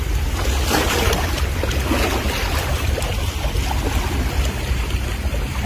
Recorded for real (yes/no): yes